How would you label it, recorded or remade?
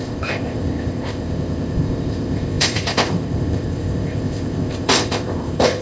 remade